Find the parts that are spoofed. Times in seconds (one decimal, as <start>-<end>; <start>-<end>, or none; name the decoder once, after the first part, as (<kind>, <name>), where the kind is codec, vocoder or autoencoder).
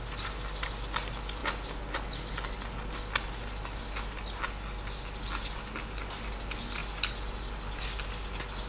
none